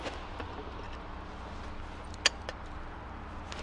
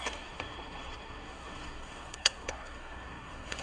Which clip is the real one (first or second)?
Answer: first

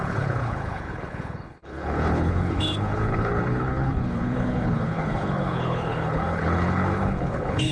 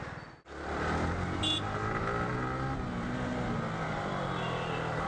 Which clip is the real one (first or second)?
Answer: second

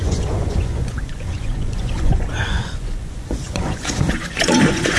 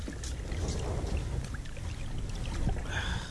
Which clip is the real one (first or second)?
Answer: second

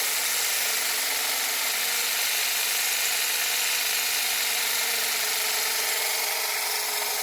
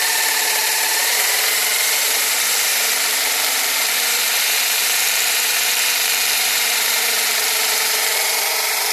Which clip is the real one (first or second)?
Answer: first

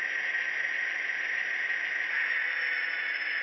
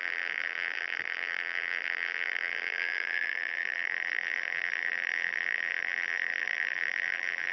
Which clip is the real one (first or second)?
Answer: first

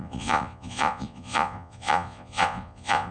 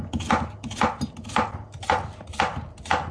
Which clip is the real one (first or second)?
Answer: second